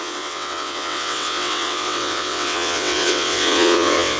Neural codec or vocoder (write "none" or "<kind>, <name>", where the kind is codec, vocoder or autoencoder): vocoder, WaveNeXt